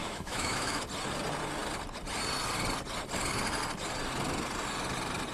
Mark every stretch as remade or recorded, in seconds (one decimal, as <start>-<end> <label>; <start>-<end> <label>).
0.0-0.8 remade; 0.8-5.3 recorded